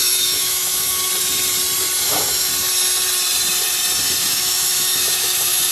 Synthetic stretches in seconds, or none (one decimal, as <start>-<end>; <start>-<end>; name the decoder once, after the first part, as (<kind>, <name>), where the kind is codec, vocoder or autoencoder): 0.0-1.1 (autoencoder, DAC-VAE); 2.0-2.5; 4.2-5.7